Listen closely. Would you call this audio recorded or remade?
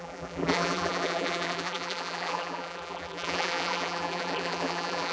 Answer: remade